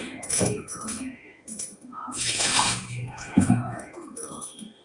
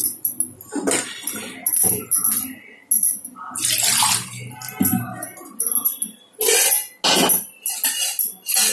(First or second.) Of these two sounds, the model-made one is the first